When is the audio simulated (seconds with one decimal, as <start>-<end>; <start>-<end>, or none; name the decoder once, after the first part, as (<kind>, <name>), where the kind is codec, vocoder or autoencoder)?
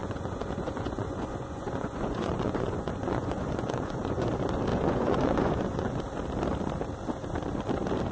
0.0-4.3 (vocoder, Vocos); 4.7-6.0